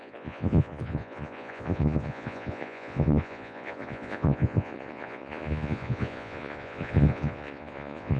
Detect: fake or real fake